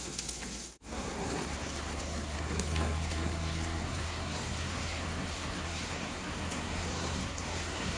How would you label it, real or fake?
fake